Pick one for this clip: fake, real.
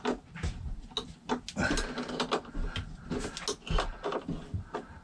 real